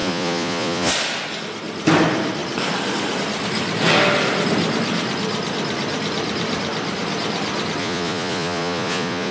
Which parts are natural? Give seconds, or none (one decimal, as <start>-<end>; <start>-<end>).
0.9-7.8

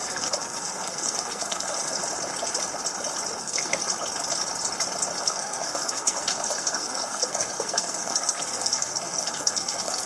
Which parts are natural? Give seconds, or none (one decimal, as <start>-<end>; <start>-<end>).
2.0-3.4; 3.8-5.2